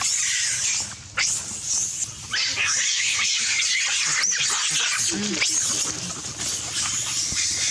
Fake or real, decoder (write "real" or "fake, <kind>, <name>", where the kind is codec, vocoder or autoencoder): real